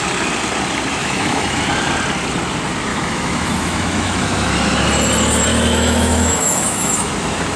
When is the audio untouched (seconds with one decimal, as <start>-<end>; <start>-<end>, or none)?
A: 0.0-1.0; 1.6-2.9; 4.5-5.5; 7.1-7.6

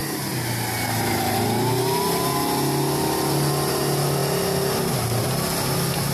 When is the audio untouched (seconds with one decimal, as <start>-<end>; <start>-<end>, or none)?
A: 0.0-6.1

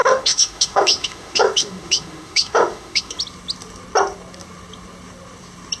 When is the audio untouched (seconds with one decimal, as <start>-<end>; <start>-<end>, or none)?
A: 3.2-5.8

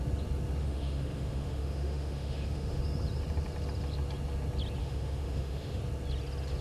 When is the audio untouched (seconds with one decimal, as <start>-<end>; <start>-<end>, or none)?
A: 0.0-0.6; 2.8-4.8; 5.8-6.6

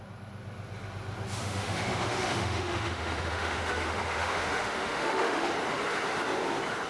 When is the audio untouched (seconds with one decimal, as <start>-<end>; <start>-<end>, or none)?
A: 0.0-1.4; 5.5-6.9

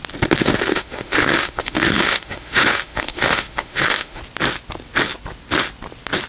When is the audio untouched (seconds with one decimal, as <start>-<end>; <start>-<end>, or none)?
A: 0.0-0.4; 4.2-6.3

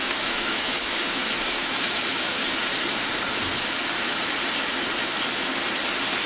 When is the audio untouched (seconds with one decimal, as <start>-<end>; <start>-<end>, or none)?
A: 2.4-6.3

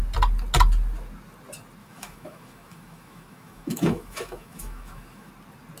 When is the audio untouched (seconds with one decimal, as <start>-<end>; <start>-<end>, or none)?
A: 0.0-1.8; 5.3-5.8